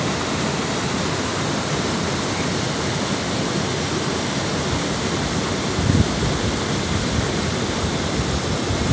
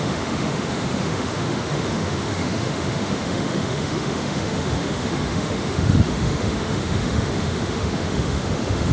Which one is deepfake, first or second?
second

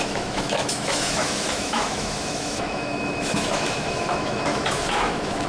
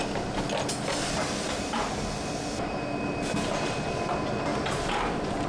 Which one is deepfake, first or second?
first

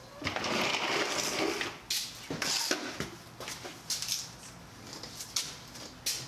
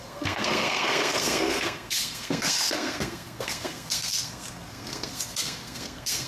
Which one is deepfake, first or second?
second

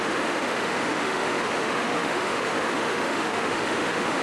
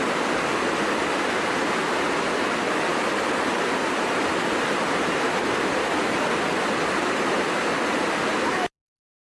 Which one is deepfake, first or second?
first